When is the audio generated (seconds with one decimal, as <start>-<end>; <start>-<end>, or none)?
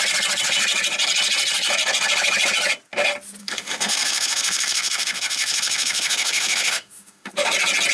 3.4-7.3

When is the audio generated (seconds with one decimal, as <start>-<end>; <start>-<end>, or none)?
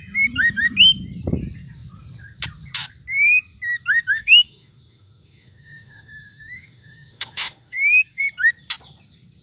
4.2-8.2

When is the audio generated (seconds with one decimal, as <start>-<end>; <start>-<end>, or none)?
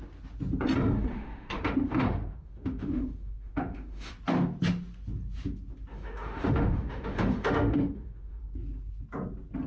1.1-4.1; 5.9-8.4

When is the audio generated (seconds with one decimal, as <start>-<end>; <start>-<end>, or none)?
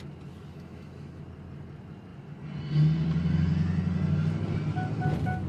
0.5-1.2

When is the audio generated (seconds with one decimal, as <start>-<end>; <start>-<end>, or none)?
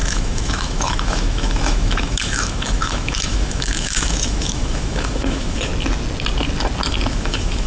0.0-5.7; 7.1-7.7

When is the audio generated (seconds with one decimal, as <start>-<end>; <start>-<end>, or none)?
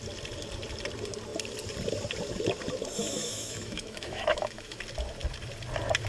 3.0-4.8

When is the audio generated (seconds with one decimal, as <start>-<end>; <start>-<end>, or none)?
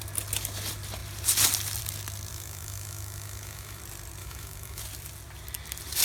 2.3-3.8; 4.2-4.8